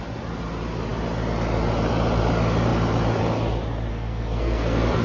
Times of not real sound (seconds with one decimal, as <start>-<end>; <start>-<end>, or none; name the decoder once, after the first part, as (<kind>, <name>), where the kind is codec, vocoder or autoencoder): 3.9-5.0 (codec, SNAC)